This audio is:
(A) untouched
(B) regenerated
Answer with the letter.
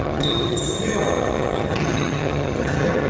B